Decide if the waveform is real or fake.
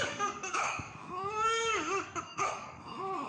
fake